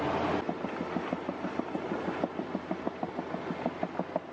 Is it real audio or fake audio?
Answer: real